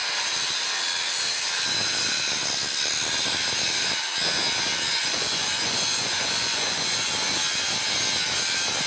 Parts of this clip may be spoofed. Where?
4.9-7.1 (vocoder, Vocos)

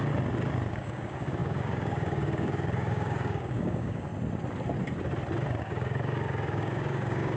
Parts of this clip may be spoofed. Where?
0.7-4.1 (codec, DAC); 5.6-7.4

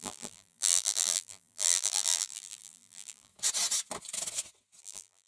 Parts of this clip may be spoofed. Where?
0.0-3.3 (vocoder, BigVGAN v2); 4.8-5.3

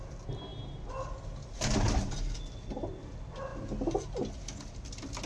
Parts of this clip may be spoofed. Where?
none

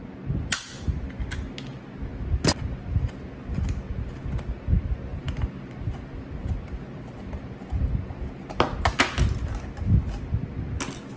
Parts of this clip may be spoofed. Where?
5.1-7.3 (vocoder, BigVGAN v2)

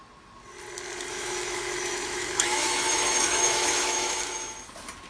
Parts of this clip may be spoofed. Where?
1.1-4.2 (autoencoder, DAC-VAE)